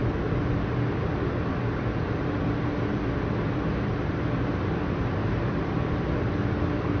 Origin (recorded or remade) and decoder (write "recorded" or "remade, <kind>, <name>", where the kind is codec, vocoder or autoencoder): recorded